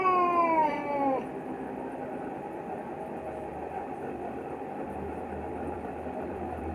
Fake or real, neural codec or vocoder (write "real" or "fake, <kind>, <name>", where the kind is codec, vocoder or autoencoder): fake, vocoder, BigVGAN v2